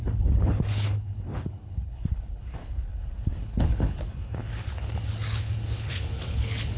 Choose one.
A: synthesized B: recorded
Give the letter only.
A